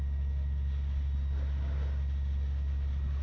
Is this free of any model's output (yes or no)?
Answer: yes